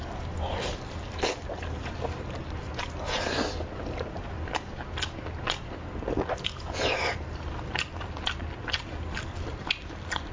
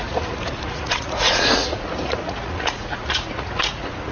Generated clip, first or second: second